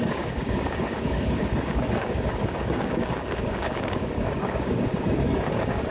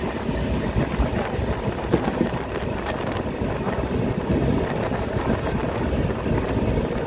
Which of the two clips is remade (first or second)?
first